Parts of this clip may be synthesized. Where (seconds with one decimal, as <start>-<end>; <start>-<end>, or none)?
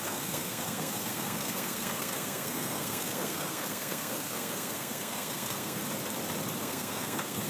0.0-5.8; 6.6-7.5